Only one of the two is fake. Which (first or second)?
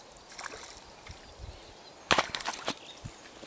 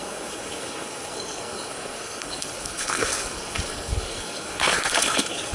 second